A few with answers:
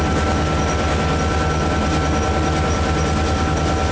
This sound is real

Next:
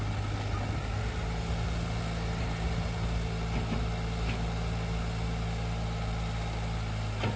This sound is real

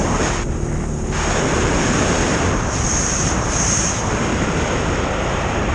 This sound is real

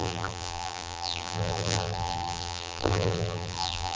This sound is fake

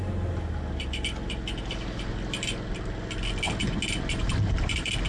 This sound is real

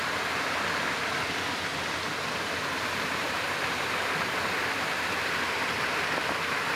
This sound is fake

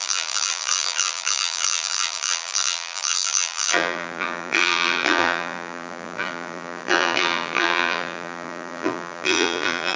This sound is fake